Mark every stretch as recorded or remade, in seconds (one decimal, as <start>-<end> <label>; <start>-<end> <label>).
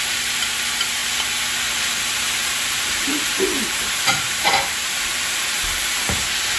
0.0-2.4 recorded; 2.4-6.6 remade